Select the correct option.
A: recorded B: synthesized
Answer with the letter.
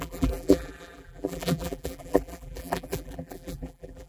B